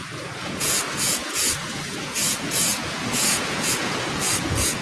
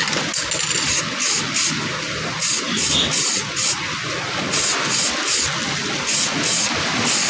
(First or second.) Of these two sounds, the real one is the second